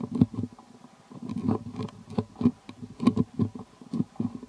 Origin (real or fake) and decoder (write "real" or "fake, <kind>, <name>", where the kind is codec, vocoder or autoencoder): real